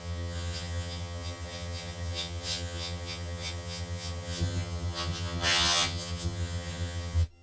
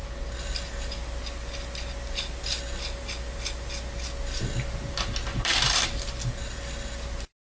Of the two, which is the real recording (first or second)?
second